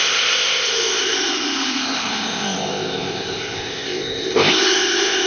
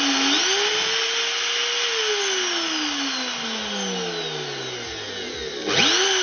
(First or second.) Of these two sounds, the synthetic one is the first